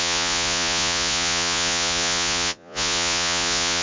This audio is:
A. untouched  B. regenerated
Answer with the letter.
B